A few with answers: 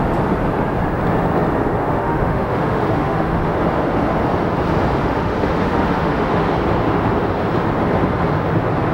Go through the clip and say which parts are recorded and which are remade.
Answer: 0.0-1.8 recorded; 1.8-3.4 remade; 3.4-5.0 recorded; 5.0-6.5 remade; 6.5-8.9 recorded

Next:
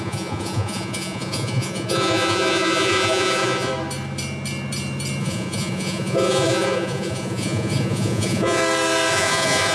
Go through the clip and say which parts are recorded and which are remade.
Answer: 0.0-3.7 remade; 3.7-5.2 recorded; 5.2-8.6 remade; 8.6-9.1 recorded; 9.1-9.7 remade

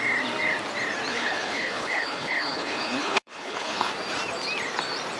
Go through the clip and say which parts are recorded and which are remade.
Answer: 0.0-1.1 recorded; 1.1-3.9 remade; 3.9-5.2 recorded

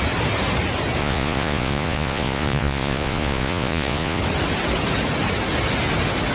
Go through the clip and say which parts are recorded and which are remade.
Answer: 0.0-1.0 recorded; 1.0-4.2 remade; 4.2-6.3 recorded